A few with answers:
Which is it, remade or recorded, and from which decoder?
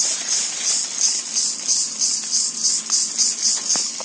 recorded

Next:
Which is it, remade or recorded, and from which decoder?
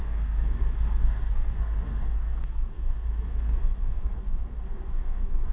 remade, codec, SNAC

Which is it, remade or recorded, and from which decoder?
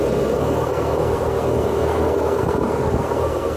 remade, codec, SNAC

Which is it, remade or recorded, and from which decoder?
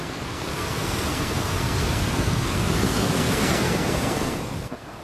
remade, codec, SNAC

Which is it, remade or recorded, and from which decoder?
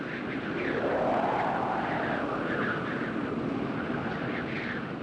recorded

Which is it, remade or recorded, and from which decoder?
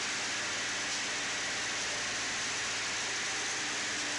recorded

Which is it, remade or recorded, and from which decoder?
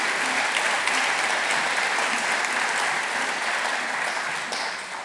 recorded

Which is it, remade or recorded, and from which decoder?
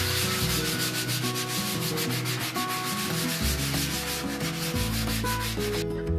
recorded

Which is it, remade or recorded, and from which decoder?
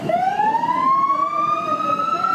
recorded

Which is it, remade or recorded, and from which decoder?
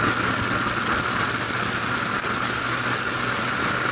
recorded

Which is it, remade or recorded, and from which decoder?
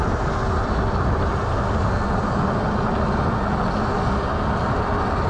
recorded